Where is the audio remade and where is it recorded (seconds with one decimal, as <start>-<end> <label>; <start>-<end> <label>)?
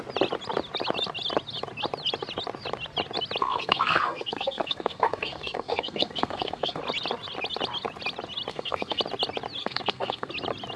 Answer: 0.0-3.4 recorded; 3.4-6.8 remade; 6.8-8.5 recorded; 8.5-9.0 remade; 9.0-9.6 recorded; 9.6-10.3 remade; 10.3-10.8 recorded